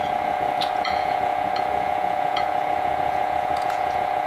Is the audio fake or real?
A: fake